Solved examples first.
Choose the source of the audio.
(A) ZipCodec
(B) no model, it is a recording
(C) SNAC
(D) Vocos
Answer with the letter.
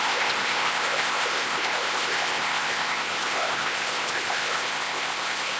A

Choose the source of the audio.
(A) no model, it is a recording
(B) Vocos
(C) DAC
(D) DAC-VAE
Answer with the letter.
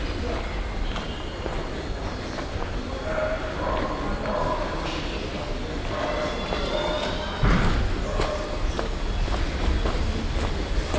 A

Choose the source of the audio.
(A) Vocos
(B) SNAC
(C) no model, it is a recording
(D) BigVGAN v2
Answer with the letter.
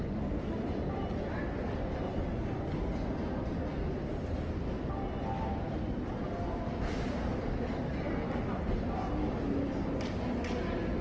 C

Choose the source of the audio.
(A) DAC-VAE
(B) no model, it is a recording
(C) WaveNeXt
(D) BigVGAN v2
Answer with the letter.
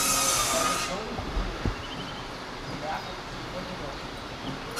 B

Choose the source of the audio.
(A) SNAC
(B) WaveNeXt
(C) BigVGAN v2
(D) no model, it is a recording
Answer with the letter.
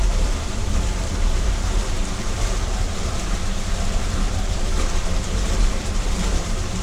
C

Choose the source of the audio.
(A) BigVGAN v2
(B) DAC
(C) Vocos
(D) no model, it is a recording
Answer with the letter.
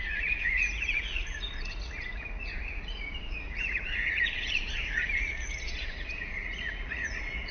C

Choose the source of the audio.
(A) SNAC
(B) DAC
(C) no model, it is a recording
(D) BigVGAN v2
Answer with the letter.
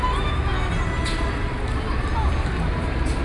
C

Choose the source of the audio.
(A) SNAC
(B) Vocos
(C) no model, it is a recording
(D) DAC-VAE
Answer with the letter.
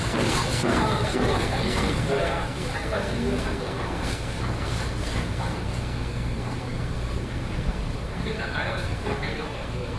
A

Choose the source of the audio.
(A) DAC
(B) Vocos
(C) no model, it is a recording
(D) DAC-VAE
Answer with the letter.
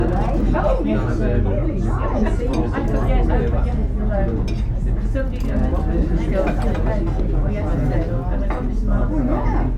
C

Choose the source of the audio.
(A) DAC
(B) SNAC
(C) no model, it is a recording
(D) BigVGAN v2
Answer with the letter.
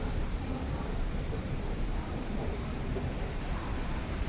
D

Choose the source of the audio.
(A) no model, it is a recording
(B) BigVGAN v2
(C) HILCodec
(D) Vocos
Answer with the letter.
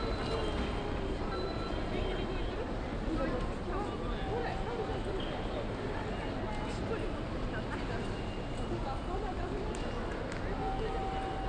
A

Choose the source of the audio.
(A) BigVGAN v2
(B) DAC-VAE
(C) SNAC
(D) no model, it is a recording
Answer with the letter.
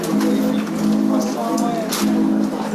D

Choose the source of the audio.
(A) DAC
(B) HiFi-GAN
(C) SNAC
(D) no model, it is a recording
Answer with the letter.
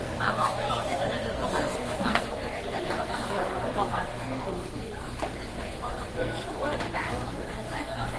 C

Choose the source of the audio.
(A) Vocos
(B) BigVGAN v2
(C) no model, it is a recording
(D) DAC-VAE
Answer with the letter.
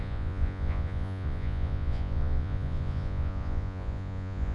A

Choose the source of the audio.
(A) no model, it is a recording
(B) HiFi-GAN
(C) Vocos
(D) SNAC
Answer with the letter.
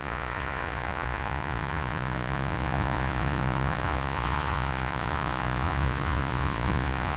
C